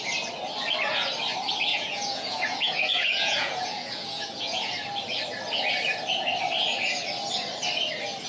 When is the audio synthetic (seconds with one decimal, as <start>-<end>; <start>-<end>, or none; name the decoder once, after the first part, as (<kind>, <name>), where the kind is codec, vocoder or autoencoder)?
1.7-4.7 (vocoder, Vocos)